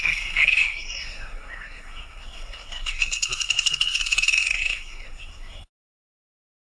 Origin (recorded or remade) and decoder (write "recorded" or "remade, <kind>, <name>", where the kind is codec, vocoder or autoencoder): remade, codec, SNAC